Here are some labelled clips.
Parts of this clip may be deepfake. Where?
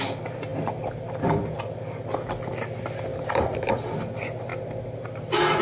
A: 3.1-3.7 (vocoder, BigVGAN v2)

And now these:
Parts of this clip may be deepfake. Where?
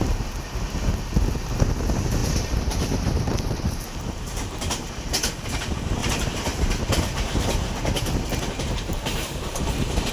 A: 2.2-4.9 (vocoder, BigVGAN v2); 6.0-10.1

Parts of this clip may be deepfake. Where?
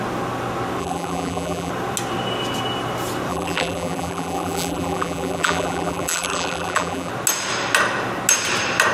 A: 0.8-1.7 (vocoder, BigVGAN v2); 3.3-7.1